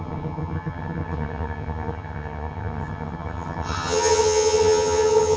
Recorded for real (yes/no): no